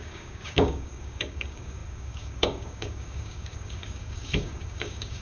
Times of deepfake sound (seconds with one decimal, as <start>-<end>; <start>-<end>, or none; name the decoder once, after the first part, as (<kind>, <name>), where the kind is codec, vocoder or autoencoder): 0.0-5.2 (codec, DAC)